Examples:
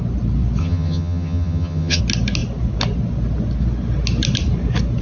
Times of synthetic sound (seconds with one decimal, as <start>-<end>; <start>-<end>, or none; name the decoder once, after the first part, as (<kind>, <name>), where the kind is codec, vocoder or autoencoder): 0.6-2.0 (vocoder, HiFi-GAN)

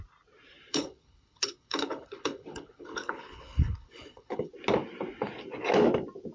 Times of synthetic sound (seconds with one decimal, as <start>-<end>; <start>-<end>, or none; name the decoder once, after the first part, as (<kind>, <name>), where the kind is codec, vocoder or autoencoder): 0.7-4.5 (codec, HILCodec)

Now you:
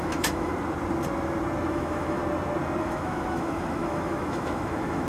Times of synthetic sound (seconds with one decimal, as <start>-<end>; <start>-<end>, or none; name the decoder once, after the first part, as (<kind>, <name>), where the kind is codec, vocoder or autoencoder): 0.0-0.5 (autoencoder, DAC-VAE); 1.7-2.2; 2.8-5.1